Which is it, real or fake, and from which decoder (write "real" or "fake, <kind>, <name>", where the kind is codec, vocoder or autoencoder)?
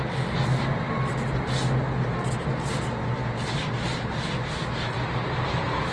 real